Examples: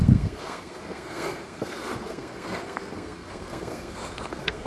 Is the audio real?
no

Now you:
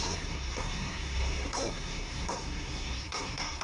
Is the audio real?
no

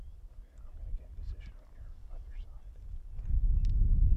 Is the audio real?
yes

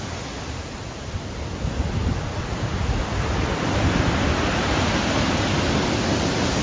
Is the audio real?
yes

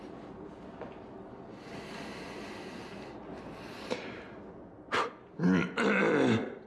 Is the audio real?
yes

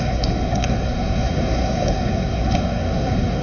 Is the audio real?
no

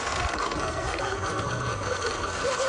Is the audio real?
no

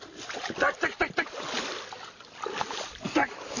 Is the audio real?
yes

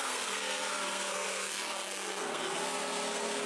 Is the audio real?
no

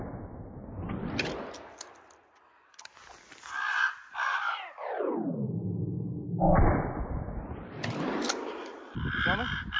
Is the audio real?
yes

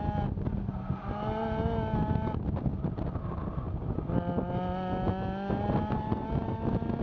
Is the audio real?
yes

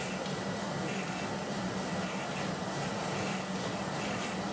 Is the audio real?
yes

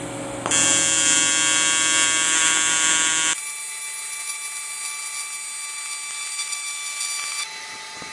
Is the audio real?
yes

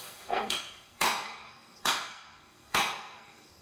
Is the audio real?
no